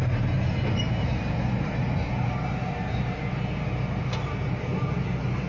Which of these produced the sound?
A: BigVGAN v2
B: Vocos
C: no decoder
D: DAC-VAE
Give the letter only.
C